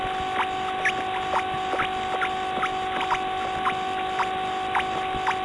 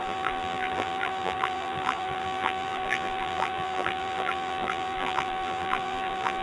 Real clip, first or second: first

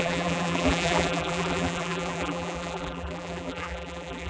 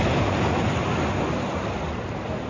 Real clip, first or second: second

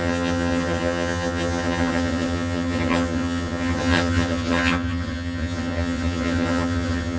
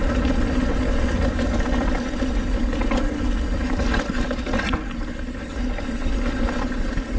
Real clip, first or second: second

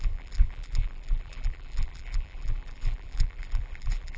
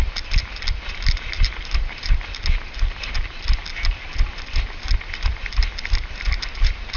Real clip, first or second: second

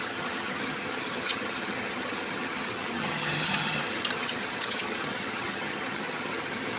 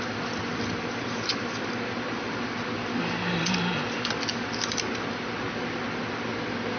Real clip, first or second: second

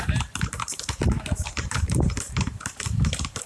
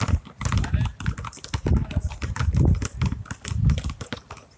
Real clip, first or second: second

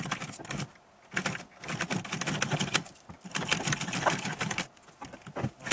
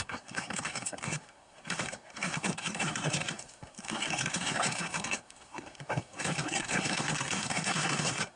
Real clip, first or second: first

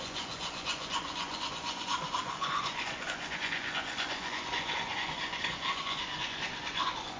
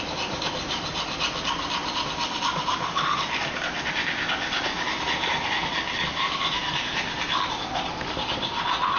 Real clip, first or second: second